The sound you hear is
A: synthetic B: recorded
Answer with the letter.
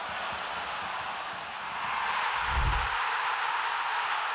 B